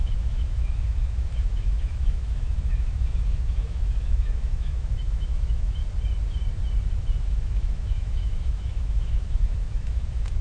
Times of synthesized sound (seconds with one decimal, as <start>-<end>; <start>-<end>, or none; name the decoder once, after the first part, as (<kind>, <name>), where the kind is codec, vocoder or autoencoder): 0.0-5.8 (autoencoder, DAC-VAE); 7.2-10.4